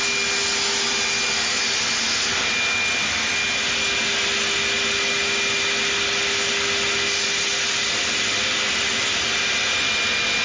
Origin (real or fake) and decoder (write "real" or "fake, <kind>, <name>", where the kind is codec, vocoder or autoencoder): real